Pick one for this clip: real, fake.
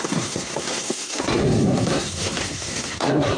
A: fake